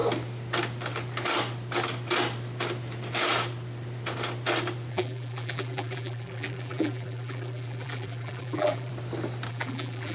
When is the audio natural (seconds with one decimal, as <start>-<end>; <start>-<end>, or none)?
0.0-4.9; 8.9-9.5